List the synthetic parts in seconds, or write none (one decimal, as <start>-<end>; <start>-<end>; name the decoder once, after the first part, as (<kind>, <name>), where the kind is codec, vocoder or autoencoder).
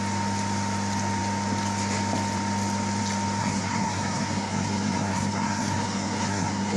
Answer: 3.4-6.8 (codec, SNAC)